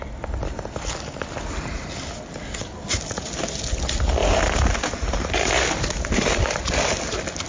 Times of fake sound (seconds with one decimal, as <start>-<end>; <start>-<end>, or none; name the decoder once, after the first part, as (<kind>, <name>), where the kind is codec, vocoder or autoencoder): none

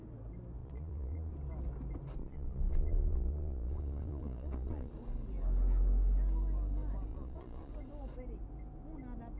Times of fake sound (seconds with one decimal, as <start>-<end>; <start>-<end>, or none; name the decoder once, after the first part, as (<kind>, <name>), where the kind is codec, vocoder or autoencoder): 0.6-1.3 (vocoder, Vocos); 2.2-4.9; 7.1-7.7

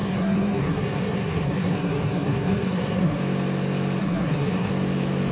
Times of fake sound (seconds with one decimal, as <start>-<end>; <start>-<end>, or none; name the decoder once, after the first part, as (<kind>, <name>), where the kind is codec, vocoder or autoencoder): 0.0-3.2 (codec, SNAC); 4.0-4.7

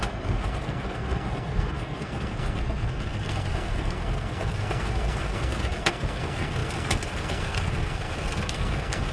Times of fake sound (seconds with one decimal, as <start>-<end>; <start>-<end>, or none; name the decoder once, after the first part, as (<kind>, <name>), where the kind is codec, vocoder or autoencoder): 0.0-9.1 (codec, SNAC)

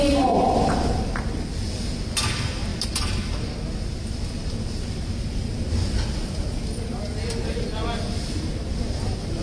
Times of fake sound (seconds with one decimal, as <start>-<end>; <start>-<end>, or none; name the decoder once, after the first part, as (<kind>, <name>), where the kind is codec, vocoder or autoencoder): none

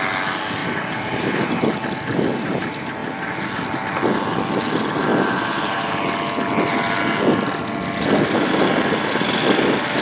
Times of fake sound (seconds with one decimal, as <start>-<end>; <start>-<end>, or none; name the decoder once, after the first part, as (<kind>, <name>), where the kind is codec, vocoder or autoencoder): 0.6-1.3 (vocoder, BigVGAN v2); 5.1-5.9